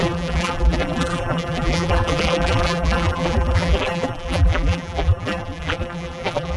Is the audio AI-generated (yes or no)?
yes